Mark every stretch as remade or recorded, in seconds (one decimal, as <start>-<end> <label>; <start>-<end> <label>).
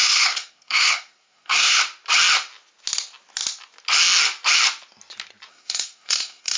0.0-1.8 remade; 1.8-5.5 recorded; 5.5-6.6 remade